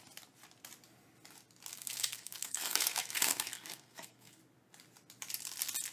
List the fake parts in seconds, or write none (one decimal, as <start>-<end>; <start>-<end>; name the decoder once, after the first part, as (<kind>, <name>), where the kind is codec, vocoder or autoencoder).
1.7-4.4 (codec, SNAC)